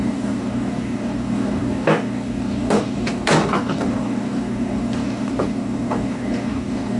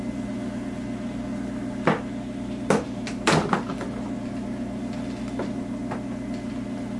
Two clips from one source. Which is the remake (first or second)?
first